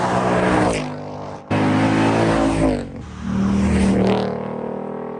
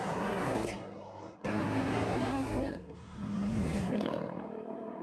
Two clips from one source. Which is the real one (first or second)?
first